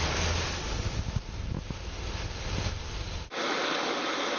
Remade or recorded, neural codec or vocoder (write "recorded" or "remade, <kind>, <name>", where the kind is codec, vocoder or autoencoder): recorded